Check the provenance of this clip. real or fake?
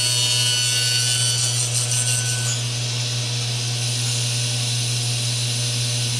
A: real